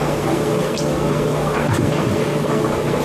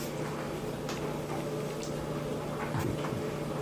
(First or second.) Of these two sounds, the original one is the second